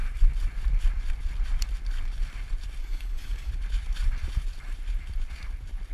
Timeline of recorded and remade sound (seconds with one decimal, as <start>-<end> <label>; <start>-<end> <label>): 0.0-2.8 recorded; 2.8-3.5 remade; 3.5-5.9 recorded